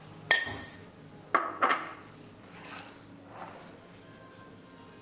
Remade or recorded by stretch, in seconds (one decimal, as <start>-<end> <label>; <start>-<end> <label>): 0.0-5.0 recorded